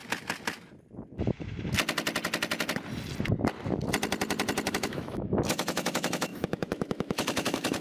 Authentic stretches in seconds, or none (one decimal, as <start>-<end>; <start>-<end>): 0.0-4.7